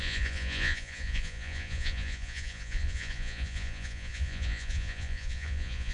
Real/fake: fake